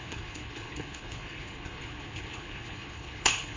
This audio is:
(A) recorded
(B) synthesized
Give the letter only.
B